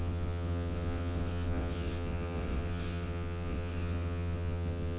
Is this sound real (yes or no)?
no